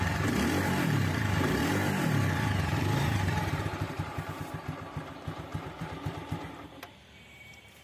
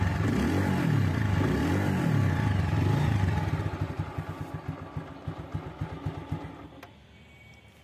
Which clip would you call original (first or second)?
second